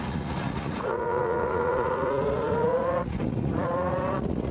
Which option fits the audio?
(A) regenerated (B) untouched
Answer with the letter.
A